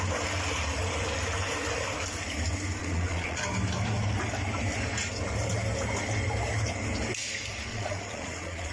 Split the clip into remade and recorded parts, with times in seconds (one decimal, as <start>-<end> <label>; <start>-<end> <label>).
0.0-2.8 recorded; 2.8-3.4 remade; 3.4-7.7 recorded; 7.7-8.7 remade